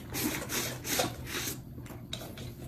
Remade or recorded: recorded